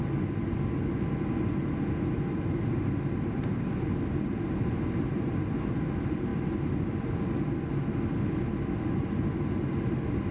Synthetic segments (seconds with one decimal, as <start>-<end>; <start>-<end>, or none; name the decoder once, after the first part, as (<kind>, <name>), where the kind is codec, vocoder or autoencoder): none